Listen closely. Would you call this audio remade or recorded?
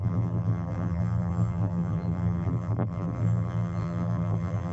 remade